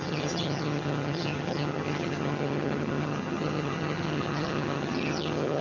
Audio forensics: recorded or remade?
remade